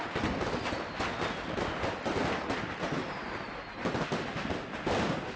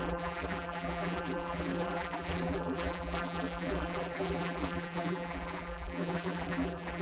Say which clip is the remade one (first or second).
second